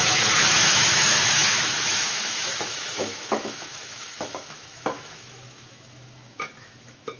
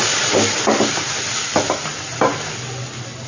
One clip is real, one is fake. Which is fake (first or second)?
first